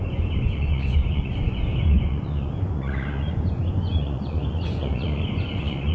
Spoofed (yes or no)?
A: yes